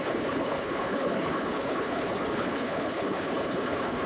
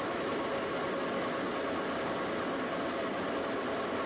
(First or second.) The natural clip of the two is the second